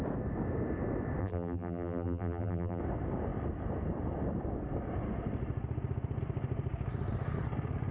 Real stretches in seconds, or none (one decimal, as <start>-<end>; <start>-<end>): 0.0-1.2; 2.8-7.9